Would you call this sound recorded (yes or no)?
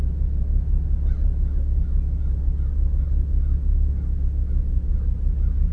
yes